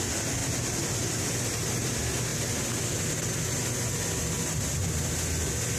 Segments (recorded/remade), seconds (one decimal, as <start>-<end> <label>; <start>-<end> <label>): 0.0-5.8 recorded